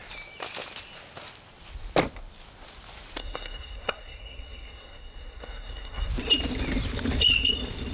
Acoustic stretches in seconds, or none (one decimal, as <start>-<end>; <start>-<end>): 0.0-3.2; 6.1-7.9